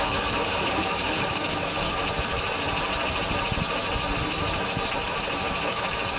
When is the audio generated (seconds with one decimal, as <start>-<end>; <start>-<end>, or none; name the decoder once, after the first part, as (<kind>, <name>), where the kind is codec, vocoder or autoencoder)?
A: 0.0-2.0 (codec, DAC); 5.7-6.2